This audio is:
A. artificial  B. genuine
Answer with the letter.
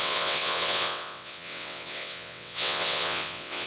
A